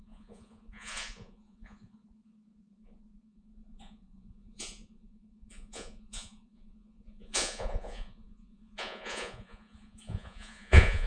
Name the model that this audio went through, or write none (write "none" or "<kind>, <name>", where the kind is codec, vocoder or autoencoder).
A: vocoder, Vocos